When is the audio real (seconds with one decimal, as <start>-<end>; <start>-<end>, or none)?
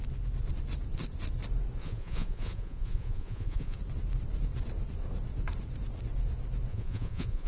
0.0-1.8; 3.8-6.7